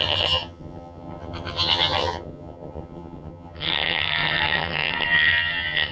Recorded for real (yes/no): no